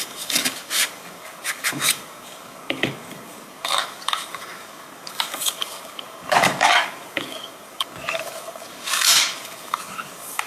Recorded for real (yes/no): no